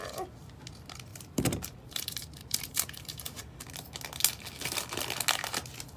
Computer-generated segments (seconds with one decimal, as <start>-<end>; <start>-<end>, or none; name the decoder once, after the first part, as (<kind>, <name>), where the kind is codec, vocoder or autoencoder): 1.1-3.4 (vocoder, BigVGAN v2)

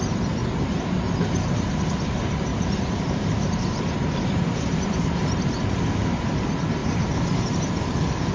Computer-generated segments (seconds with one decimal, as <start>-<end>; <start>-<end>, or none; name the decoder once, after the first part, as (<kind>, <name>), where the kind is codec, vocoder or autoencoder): 2.5-3.8 (vocoder, BigVGAN v2); 6.8-7.6

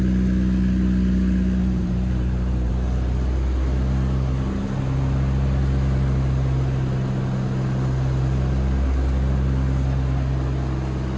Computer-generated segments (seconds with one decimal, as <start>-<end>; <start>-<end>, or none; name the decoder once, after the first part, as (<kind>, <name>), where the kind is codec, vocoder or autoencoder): 1.6-2.7 (vocoder, BigVGAN v2)

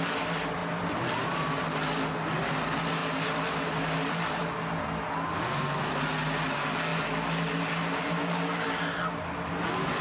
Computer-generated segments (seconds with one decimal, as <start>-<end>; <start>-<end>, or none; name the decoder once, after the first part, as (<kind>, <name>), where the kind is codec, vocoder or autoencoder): 0.6-2.5 (vocoder, BigVGAN v2); 3.0-4.4